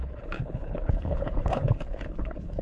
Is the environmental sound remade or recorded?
remade